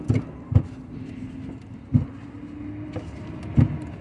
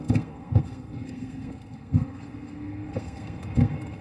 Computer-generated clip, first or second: second